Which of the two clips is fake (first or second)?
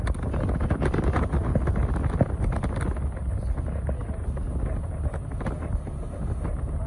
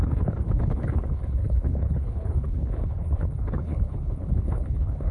second